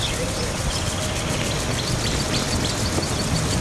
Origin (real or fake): real